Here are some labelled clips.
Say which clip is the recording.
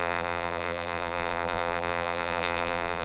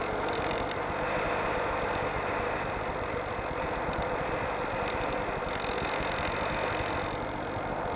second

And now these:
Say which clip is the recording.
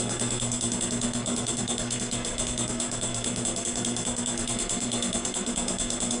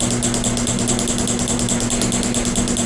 second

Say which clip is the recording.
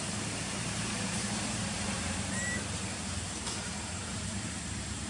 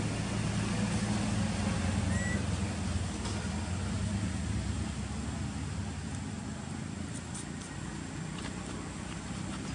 second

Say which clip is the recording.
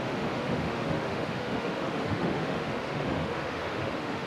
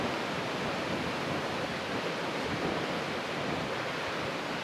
second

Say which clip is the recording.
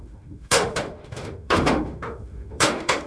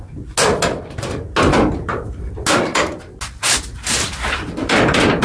second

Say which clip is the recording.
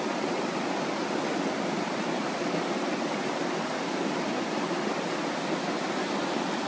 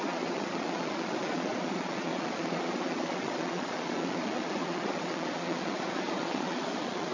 first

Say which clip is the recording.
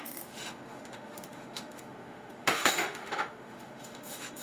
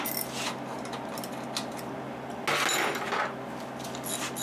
second